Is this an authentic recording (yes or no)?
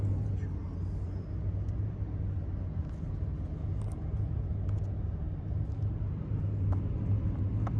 yes